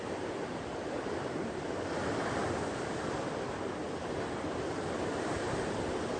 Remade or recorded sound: recorded